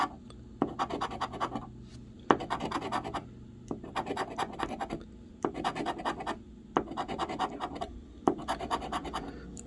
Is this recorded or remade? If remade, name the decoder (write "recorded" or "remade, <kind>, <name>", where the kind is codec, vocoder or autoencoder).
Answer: recorded